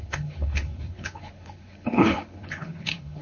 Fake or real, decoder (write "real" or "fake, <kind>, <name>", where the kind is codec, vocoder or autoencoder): fake, codec, HILCodec